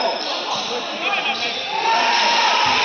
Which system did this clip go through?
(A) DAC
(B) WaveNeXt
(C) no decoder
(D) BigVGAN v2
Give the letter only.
C